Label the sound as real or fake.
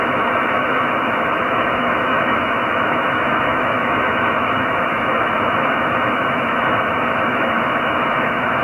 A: fake